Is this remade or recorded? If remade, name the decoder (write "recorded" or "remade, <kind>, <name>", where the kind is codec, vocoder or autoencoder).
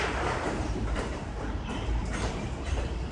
remade, vocoder, BigVGAN v2